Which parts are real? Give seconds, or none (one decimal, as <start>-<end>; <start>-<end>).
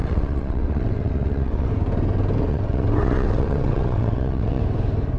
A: 1.7-2.5; 4.6-5.2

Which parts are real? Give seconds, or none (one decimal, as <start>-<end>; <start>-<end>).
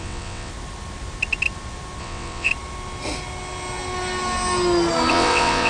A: 0.5-2.0; 2.5-5.1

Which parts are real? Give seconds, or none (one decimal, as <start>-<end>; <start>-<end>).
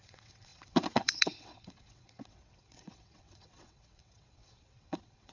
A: none